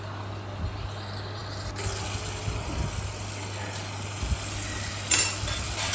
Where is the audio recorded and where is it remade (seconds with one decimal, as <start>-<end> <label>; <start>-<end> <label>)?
0.0-5.9 recorded